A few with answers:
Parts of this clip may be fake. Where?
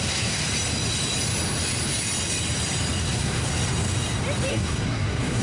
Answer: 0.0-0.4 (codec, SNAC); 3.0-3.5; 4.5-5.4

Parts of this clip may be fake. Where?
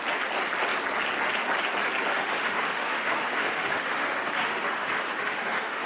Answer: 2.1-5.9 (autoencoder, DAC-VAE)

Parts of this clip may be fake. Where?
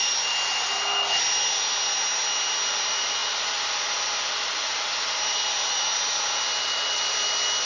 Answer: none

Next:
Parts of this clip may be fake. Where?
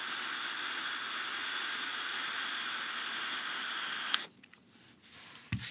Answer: none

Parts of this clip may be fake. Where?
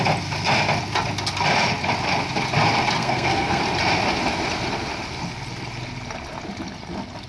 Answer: 3.0-3.6 (codec, SNAC)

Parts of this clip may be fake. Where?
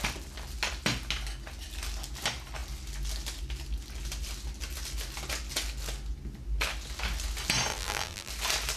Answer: 7.7-8.3 (vocoder, BigVGAN v2)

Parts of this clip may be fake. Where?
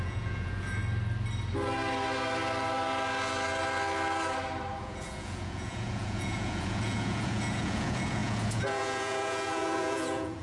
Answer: 0.0-0.8 (vocoder, Vocos); 4.8-10.4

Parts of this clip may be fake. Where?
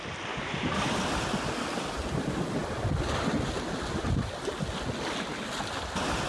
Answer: none